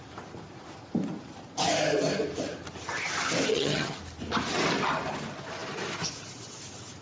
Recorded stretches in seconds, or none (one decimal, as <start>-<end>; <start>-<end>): 0.0-3.5; 4.0-7.0